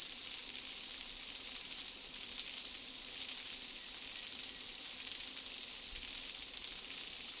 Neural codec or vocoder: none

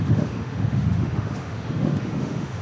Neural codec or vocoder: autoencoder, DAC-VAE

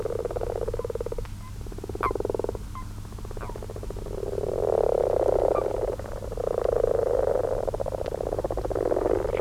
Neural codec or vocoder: none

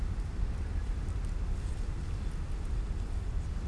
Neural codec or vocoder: none